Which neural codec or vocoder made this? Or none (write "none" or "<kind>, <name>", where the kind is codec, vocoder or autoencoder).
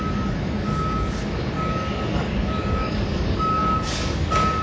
codec, DAC